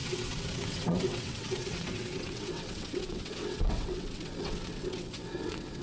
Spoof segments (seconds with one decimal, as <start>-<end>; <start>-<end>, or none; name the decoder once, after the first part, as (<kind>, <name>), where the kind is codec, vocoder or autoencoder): 0.0-5.8 (vocoder, WaveNeXt)